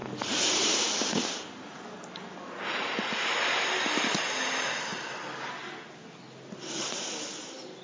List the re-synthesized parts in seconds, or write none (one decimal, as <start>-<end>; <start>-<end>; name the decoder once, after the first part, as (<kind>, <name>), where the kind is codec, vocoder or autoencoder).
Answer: 4.9-5.7 (vocoder, BigVGAN v2)